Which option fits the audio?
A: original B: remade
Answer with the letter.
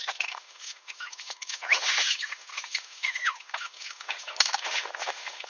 B